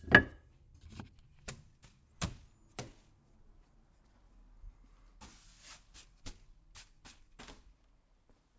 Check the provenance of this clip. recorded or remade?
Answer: recorded